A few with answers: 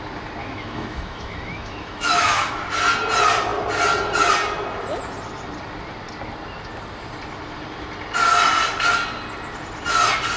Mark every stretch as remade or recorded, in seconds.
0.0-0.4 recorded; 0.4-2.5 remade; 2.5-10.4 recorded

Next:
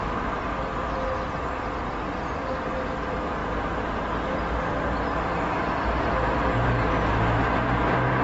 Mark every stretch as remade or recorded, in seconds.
0.0-8.2 recorded

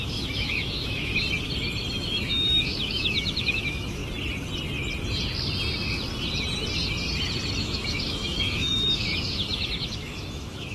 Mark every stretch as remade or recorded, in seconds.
0.0-1.1 remade; 1.1-1.9 recorded; 1.9-4.0 remade; 4.0-7.6 recorded; 7.6-10.7 remade